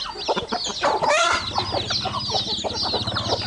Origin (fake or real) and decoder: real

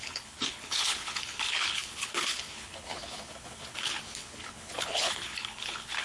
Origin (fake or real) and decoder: fake, codec, HILCodec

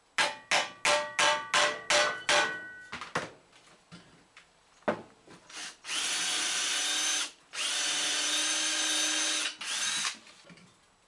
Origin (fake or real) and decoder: real